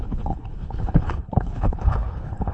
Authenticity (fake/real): fake